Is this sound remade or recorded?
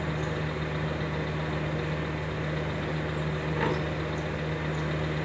recorded